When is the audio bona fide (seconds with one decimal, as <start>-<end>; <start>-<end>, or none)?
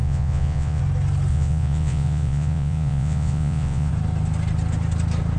0.8-1.3; 3.9-5.4